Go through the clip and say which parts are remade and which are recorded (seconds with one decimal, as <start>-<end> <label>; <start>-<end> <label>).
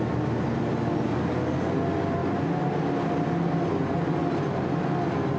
0.0-5.4 recorded